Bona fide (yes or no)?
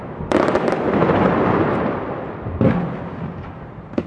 yes